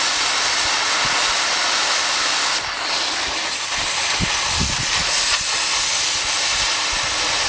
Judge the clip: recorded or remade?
recorded